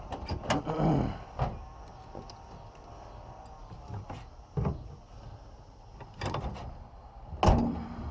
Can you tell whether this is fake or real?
real